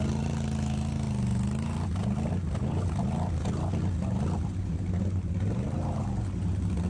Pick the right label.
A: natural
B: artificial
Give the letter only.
A